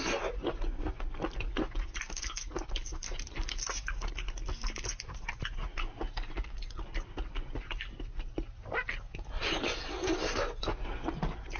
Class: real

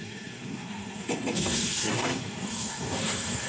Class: fake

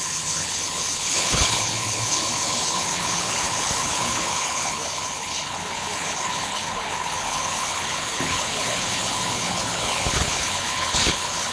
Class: fake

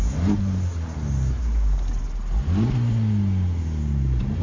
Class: real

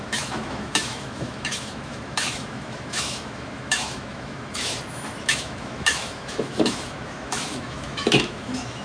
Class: fake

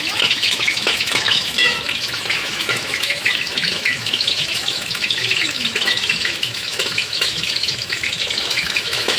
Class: fake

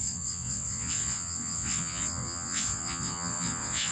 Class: fake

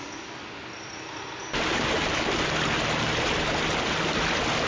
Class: real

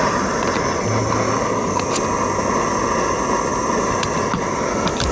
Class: real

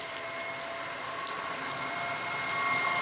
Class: real